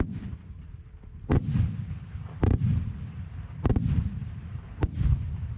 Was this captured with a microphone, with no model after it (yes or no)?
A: no